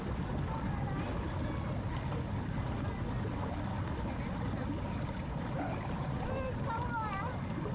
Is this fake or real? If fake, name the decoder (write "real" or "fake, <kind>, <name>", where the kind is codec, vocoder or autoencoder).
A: real